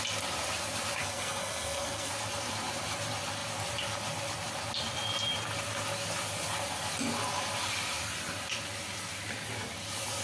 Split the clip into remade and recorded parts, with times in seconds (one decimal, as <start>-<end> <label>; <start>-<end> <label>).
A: 0.0-1.0 recorded; 1.0-2.1 remade; 2.1-10.2 recorded